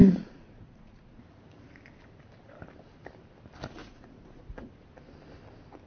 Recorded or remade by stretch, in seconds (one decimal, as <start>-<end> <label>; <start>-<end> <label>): 0.0-1.2 remade; 1.2-3.8 recorded; 3.8-4.7 remade; 4.7-5.9 recorded